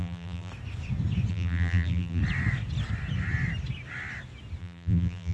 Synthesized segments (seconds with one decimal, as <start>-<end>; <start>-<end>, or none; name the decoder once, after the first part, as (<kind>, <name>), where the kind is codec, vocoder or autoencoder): 0.0-0.5 (vocoder, BigVGAN v2); 1.3-2.2; 4.6-5.3